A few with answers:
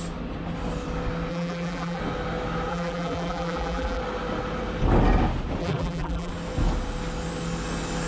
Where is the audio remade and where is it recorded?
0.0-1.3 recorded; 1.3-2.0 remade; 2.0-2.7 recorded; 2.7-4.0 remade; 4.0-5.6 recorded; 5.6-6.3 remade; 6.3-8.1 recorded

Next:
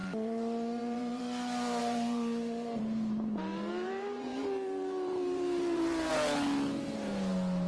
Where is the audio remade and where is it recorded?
0.0-1.2 remade; 1.2-1.8 recorded; 1.8-6.1 remade; 6.1-7.7 recorded

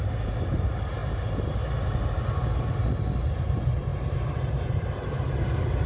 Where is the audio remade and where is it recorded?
0.0-5.9 remade

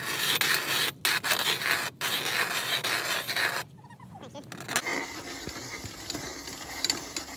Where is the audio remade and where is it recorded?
0.0-7.4 recorded

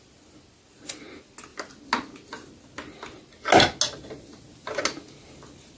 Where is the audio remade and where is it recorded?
0.0-5.8 recorded

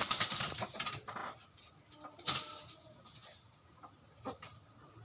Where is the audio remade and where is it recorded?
0.0-1.2 remade; 1.2-4.2 recorded; 4.2-5.0 remade

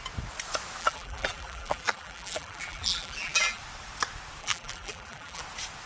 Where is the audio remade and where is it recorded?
0.0-0.8 recorded; 0.8-3.6 remade; 3.6-4.4 recorded; 4.4-5.4 remade; 5.4-5.9 recorded

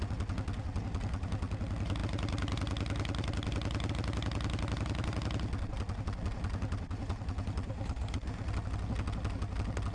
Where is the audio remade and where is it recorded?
0.0-9.9 recorded